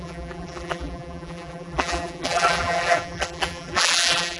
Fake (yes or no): yes